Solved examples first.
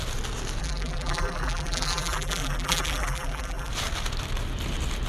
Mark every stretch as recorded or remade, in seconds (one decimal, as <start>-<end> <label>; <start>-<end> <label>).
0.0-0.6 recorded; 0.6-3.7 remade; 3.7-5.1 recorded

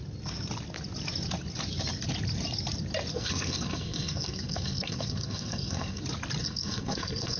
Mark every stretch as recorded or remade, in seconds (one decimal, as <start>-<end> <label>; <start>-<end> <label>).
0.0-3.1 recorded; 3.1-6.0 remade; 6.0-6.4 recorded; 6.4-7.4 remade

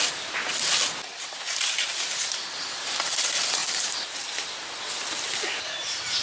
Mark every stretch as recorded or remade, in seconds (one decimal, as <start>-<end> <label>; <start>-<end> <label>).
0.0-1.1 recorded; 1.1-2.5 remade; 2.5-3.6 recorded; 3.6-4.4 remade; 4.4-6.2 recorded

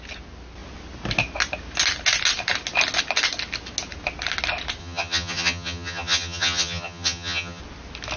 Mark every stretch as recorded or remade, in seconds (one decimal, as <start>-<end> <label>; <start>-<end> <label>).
0.0-4.8 recorded; 4.8-7.6 remade; 7.6-8.2 recorded

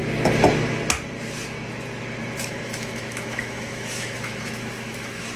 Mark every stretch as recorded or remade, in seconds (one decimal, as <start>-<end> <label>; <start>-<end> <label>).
0.0-2.4 recorded; 2.4-5.4 remade